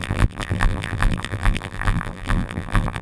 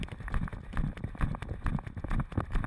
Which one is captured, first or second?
second